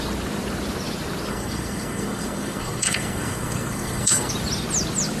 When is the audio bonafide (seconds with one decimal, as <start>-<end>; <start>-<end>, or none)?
0.0-1.3; 4.3-5.2